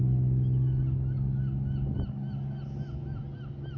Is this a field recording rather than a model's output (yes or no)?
yes